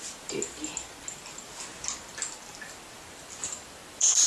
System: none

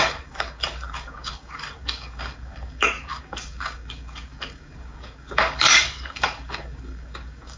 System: codec, DAC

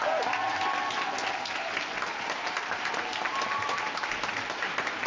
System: none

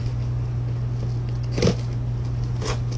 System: none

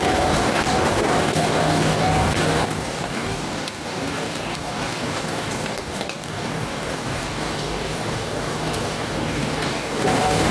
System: codec, DAC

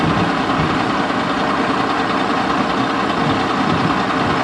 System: none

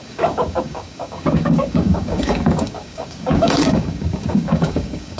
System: codec, DAC